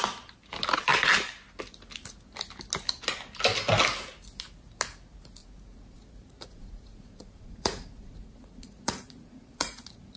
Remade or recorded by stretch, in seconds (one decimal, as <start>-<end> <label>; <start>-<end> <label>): 0.0-5.4 recorded; 5.4-10.2 remade